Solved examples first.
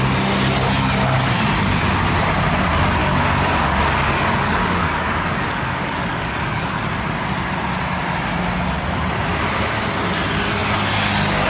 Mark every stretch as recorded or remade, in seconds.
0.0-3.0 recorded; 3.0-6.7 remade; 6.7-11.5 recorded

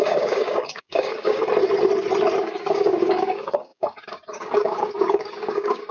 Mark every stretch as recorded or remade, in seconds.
0.0-1.4 remade; 1.4-2.4 recorded; 2.4-5.9 remade